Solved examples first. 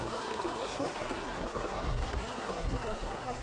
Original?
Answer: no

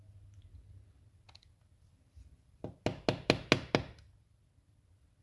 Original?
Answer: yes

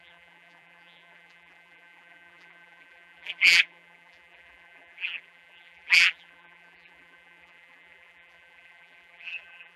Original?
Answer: no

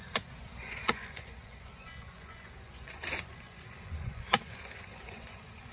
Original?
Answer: no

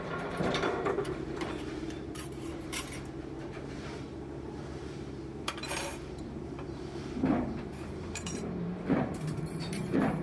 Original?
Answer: no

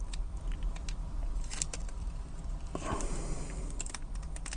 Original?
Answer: no